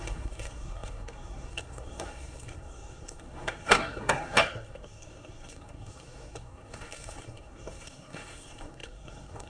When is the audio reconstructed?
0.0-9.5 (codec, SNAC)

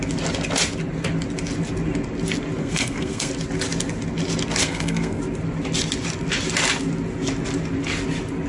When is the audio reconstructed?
2.6-3.3 (codec, SNAC); 4.6-5.2

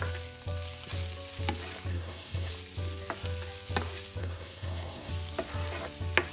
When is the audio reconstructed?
1.9-2.5 (codec, SNAC); 4.2-5.1

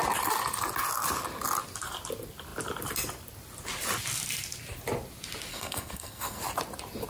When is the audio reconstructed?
5.5-6.4 (codec, SNAC)